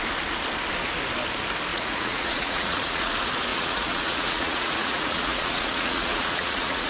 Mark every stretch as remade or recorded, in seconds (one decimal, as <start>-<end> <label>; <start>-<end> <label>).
0.0-1.7 recorded; 1.7-3.1 remade; 3.1-3.5 recorded; 3.5-6.9 remade